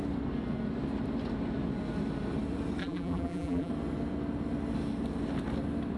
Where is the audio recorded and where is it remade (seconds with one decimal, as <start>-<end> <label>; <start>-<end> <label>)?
0.0-2.8 recorded; 2.8-3.7 remade; 3.7-6.0 recorded